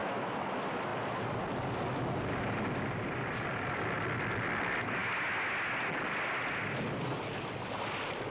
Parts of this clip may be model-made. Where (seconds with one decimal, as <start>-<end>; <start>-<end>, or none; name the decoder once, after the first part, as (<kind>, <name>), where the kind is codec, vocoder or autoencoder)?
0.0-0.5 (autoencoder, DAC-VAE)